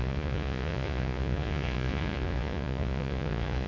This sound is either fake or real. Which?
fake